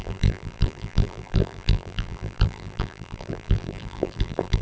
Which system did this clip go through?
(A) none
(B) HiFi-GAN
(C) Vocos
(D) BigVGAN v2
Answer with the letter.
D